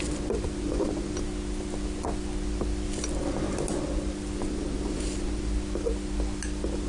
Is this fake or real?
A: real